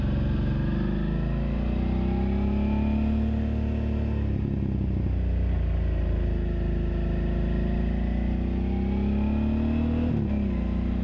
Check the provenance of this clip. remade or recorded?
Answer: recorded